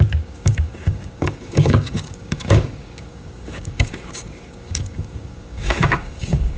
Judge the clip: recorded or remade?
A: remade